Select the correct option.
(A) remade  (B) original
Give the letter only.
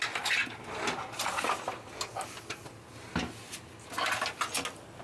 B